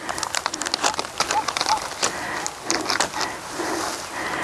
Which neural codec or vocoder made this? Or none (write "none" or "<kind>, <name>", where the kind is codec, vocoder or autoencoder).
none